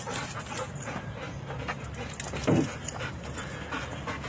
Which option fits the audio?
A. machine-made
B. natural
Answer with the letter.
B